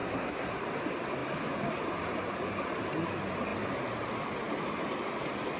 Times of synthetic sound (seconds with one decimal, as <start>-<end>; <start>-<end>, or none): 0.0-0.5